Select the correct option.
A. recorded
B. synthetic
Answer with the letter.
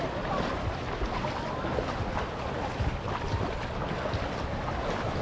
A